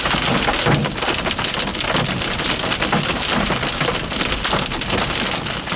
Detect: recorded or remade recorded